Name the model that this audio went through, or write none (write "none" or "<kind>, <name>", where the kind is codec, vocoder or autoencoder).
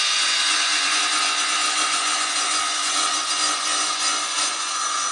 vocoder, Vocos